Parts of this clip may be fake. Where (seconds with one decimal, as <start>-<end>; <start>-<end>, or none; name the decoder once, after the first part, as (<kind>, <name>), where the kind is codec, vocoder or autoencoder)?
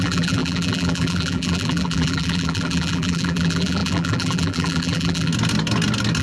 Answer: 0.0-5.3 (vocoder, BigVGAN v2)